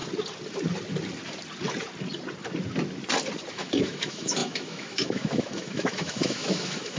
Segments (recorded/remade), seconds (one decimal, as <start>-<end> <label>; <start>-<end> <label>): 0.0-3.5 recorded; 3.5-7.0 remade